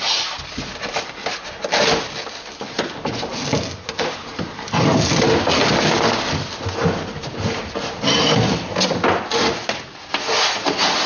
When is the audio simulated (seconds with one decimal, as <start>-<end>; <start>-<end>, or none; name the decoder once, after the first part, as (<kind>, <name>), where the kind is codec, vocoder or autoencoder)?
none